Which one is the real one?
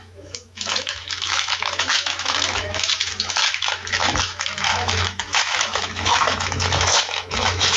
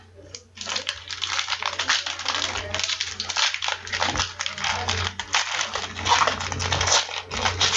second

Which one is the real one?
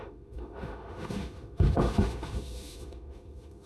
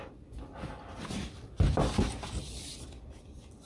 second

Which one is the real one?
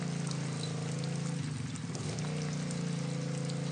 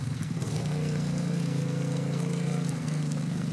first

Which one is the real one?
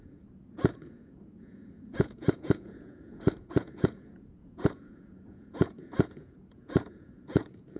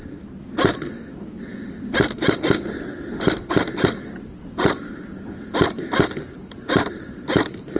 second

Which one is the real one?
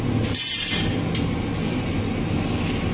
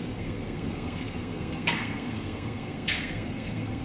first